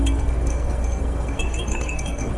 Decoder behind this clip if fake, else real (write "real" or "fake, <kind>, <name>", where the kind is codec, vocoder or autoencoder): fake, codec, SNAC